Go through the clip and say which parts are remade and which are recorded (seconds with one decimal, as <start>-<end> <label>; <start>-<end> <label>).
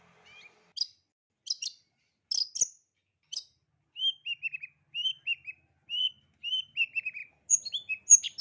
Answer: 0.0-8.4 recorded